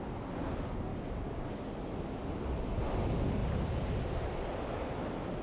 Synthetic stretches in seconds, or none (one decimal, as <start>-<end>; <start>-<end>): 0.9-1.7